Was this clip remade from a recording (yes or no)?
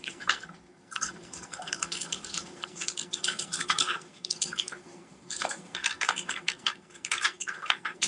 yes